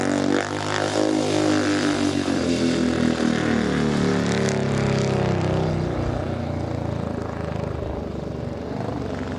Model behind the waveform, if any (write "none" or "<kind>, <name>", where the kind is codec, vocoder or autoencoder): none